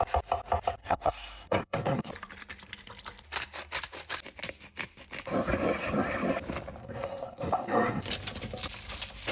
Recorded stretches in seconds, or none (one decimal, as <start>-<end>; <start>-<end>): 0.0-0.8; 2.1-6.8; 8.1-9.3